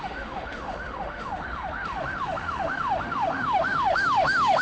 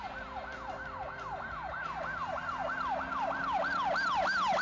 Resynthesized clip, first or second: first